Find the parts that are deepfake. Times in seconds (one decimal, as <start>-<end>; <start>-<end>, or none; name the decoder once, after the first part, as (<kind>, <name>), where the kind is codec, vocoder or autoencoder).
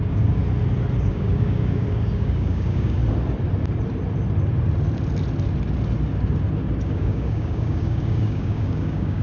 0.0-0.4 (codec, DAC); 1.1-3.0; 6.8-9.2